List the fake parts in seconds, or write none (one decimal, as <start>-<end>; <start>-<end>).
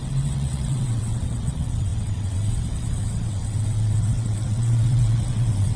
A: 0.0-5.8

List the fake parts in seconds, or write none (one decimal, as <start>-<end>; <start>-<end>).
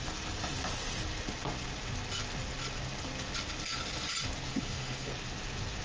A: 4.5-5.1